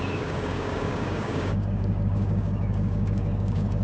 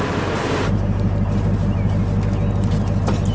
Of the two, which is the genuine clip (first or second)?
second